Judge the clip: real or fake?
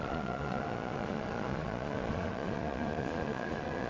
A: fake